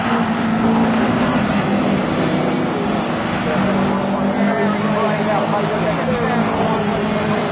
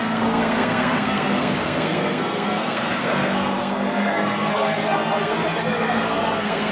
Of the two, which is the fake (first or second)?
second